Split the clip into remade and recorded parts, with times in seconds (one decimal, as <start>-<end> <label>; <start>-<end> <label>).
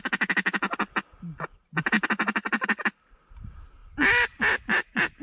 0.0-5.2 recorded